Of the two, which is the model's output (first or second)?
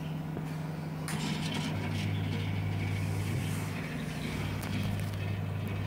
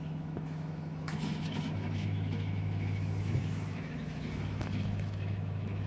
second